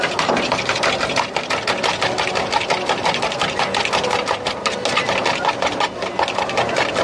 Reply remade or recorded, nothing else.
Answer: recorded